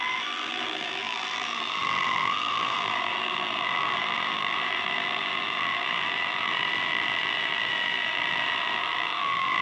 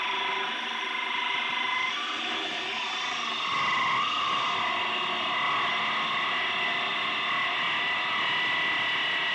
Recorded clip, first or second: second